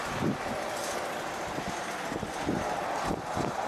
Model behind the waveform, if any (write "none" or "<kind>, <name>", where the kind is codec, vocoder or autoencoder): none